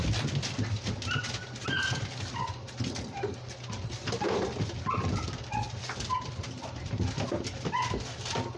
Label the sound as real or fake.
real